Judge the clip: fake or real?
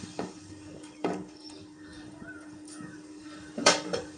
fake